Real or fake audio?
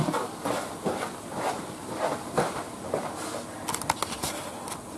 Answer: real